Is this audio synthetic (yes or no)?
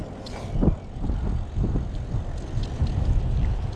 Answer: no